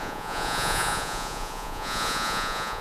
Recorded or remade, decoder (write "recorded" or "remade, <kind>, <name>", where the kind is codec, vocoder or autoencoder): remade, vocoder, Vocos